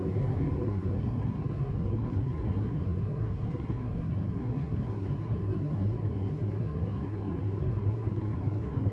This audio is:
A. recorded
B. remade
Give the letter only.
B